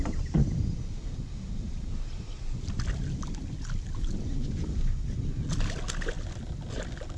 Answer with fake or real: real